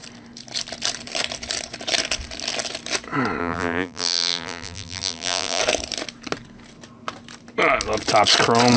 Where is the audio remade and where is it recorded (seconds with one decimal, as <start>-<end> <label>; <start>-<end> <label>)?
0.0-3.4 recorded; 3.4-5.6 remade; 5.6-8.8 recorded